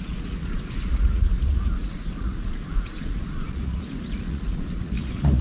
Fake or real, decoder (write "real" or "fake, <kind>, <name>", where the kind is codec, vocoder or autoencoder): fake, vocoder, Vocos